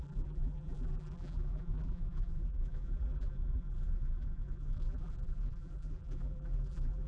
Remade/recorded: remade